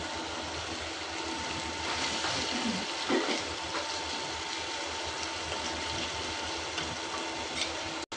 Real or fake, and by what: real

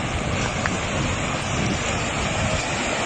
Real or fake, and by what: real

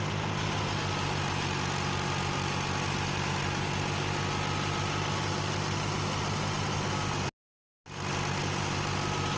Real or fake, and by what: real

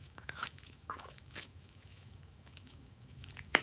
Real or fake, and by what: fake, autoencoder, DAC-VAE